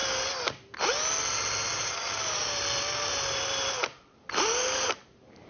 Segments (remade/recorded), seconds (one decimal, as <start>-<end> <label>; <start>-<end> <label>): 0.0-5.5 recorded